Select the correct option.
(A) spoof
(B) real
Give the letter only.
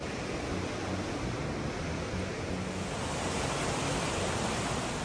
B